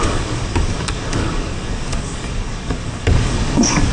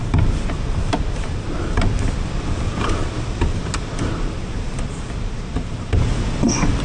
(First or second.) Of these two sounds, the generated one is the first